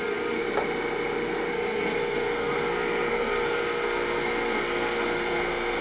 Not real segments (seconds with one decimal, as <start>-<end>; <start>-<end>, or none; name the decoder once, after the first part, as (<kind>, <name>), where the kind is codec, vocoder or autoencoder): 0.0-0.4 (codec, SNAC); 1.5-5.8